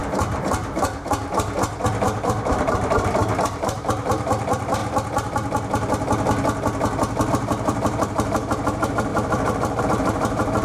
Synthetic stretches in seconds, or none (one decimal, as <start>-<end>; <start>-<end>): 1.9-4.8; 7.3-10.6